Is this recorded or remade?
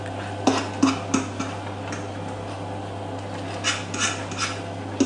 recorded